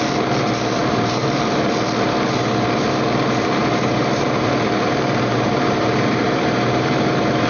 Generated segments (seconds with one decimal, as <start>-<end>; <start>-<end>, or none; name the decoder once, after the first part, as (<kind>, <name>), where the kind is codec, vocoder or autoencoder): 0.8-1.7 (vocoder, BigVGAN v2); 3.6-7.5